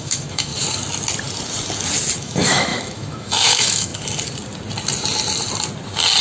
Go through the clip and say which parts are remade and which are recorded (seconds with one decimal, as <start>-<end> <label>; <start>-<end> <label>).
0.0-0.5 remade; 0.5-2.2 recorded; 2.2-3.9 remade; 3.9-6.2 recorded